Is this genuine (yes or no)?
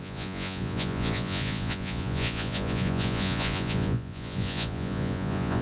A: no